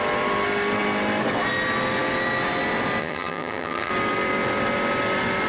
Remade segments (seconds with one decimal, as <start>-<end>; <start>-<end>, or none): 3.0-3.9

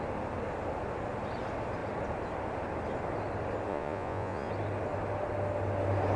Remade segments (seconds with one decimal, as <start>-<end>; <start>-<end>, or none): 3.7-4.5

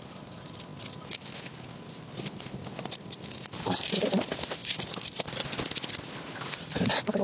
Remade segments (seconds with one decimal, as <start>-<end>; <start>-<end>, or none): none